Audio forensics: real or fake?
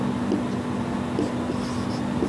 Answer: real